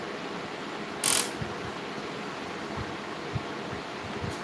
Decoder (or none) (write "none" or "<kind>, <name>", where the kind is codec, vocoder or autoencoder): none